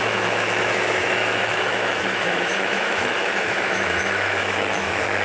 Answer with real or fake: fake